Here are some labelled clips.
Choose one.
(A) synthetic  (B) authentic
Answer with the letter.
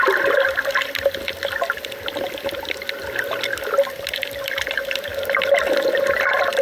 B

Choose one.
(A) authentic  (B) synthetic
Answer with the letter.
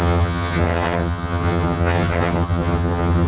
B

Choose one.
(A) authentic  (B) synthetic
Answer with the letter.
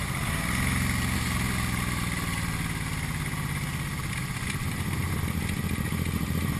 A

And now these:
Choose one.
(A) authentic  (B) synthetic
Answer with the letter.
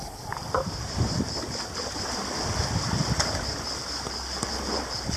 A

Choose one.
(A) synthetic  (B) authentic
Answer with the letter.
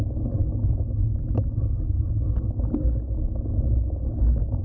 B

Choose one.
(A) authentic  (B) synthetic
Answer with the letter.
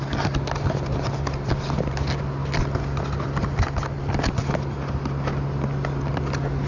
A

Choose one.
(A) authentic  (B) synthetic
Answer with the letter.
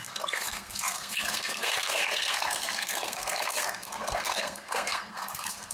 B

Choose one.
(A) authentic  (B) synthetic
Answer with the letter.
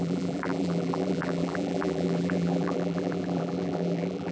B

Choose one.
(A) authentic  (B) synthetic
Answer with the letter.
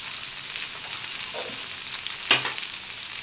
A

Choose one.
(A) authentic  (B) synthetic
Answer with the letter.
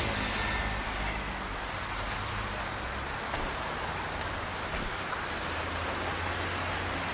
A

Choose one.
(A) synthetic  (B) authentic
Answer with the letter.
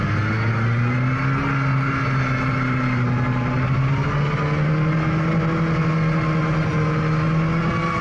B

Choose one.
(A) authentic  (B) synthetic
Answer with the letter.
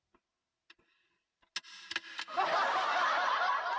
A